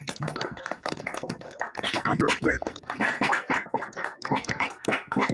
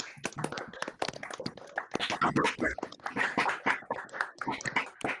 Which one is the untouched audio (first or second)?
second